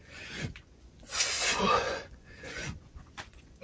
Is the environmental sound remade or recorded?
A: remade